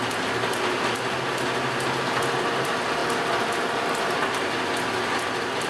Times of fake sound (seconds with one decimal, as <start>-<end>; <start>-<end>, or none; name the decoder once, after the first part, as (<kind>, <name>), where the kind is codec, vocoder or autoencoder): none